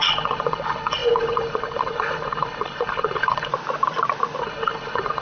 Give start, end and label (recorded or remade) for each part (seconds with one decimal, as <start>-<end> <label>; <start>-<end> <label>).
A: 0.0-3.5 remade; 3.5-4.4 recorded; 4.4-5.2 remade